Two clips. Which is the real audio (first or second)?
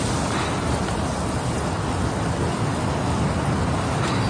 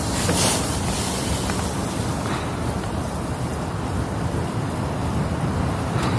first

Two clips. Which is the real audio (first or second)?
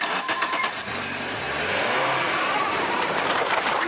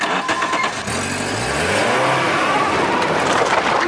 second